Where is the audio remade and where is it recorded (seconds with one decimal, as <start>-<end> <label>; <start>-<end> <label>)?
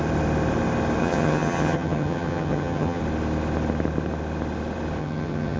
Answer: 0.0-1.0 recorded; 1.0-3.0 remade; 3.0-5.0 recorded; 5.0-5.6 remade